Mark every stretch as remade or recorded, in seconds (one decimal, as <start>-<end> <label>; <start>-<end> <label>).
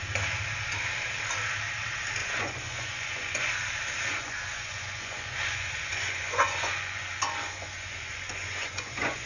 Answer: 0.0-2.2 recorded; 2.2-3.5 remade; 3.5-4.1 recorded; 4.1-9.3 remade